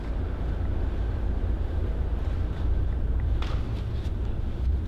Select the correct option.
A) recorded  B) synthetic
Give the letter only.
A